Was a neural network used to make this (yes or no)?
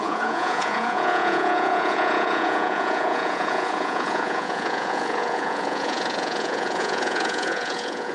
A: yes